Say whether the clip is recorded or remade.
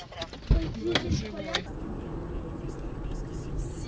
recorded